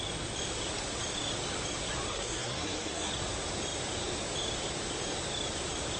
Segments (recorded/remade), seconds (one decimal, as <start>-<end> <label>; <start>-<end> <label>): 0.0-2.1 recorded; 2.1-3.1 remade; 3.1-6.0 recorded